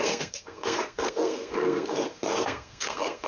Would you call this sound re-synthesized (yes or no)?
yes